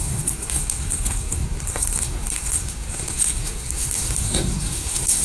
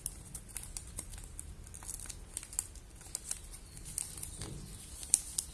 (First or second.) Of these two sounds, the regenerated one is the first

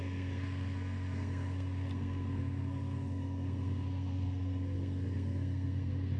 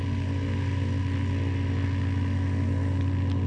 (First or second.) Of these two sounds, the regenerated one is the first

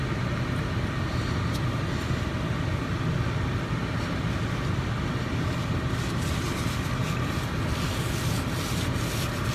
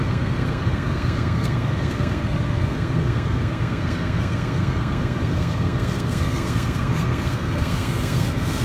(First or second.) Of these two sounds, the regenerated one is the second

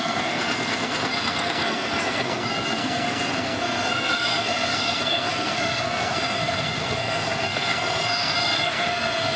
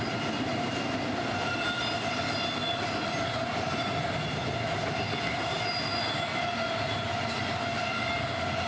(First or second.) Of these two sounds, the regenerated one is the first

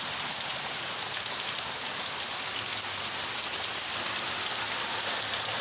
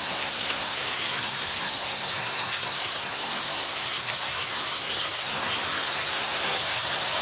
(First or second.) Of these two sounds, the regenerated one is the second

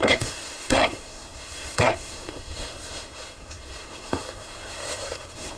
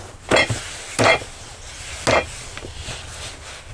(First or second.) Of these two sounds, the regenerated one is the first